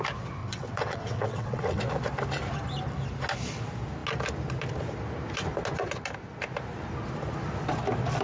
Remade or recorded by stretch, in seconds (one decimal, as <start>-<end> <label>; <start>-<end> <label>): 0.0-0.4 recorded; 0.4-1.8 remade; 1.8-8.2 recorded